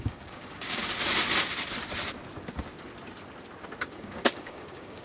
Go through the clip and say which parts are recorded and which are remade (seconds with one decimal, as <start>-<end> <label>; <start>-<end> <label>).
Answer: 0.0-0.8 remade; 0.8-3.8 recorded; 3.8-5.0 remade